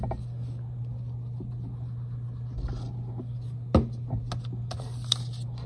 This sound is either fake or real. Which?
real